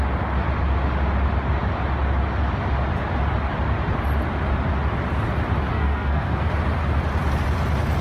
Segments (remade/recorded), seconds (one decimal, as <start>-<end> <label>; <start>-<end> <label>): 0.0-5.7 recorded; 5.7-6.5 remade; 6.5-8.0 recorded